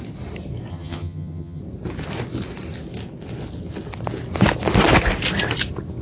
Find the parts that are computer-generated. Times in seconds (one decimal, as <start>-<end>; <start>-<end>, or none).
0.7-1.6